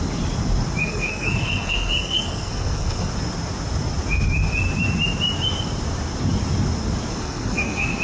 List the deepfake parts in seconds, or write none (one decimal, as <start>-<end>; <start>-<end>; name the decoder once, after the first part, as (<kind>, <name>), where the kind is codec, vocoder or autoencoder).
0.8-3.1 (codec, SNAC); 7.1-8.0